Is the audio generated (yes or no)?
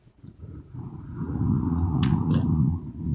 yes